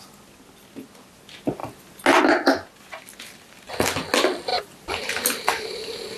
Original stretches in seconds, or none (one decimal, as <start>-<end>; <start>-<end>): 0.0-4.5